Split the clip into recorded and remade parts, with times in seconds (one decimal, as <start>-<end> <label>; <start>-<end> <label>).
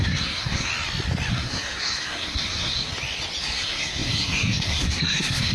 0.0-0.7 remade; 0.7-1.3 recorded; 1.3-2.9 remade; 2.9-3.4 recorded; 3.4-5.5 remade